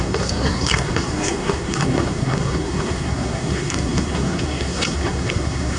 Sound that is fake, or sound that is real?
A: fake